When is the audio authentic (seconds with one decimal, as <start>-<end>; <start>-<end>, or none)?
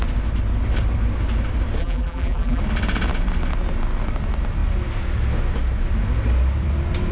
0.0-1.8; 2.6-7.1